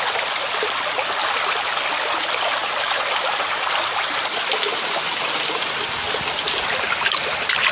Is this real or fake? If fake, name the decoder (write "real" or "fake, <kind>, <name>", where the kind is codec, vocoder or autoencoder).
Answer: real